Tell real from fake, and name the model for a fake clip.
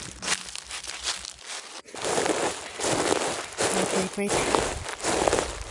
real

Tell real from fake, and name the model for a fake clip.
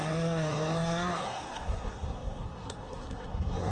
fake, codec, SNAC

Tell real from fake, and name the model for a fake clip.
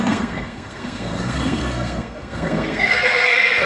fake, codec, SNAC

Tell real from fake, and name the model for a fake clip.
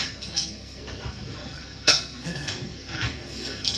fake, codec, SNAC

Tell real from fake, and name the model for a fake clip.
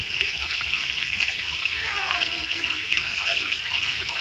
fake, codec, SNAC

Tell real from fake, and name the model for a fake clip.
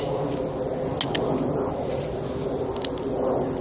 real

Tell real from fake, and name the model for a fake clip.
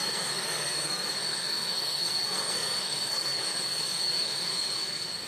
fake, codec, SNAC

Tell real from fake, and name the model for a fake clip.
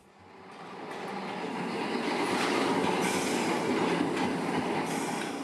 real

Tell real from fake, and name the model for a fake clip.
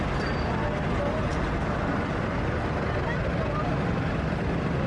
real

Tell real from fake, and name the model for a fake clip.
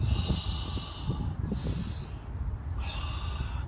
real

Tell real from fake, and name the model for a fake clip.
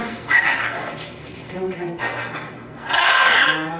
fake, codec, SNAC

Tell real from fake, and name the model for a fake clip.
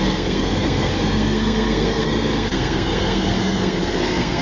fake, codec, SNAC